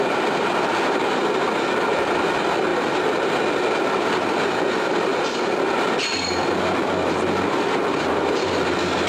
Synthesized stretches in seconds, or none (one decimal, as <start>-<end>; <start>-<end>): 0.0-2.7; 4.0-9.1